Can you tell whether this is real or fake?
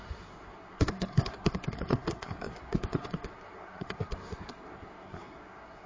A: fake